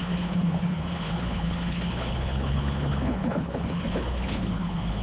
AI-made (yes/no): yes